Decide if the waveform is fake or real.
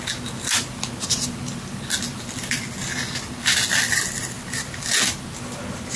real